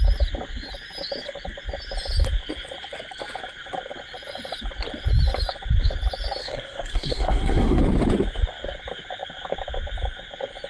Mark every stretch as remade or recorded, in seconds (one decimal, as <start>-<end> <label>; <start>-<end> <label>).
0.0-6.4 recorded; 6.4-7.8 remade; 7.8-10.7 recorded